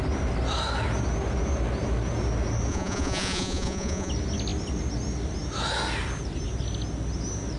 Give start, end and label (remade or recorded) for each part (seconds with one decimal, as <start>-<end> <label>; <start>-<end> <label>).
0.0-2.7 recorded; 2.7-4.1 remade; 4.1-7.6 recorded